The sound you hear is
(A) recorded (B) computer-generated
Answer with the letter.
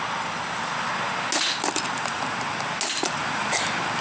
A